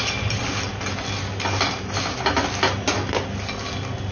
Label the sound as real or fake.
real